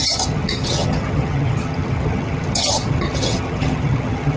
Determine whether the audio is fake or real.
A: fake